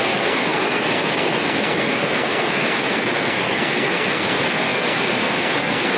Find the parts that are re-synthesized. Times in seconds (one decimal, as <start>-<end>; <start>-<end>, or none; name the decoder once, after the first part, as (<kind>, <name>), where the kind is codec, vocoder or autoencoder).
0.0-6.0 (codec, SNAC)